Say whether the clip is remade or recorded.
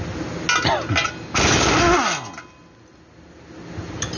recorded